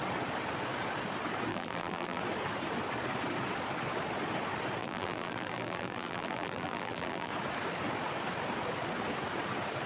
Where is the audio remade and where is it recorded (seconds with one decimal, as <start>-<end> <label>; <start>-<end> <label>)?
0.0-1.5 recorded; 1.5-2.2 remade; 2.2-4.8 recorded; 4.8-7.3 remade; 7.3-9.9 recorded